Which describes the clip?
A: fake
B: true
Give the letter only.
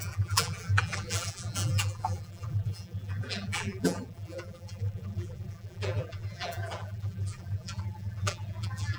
A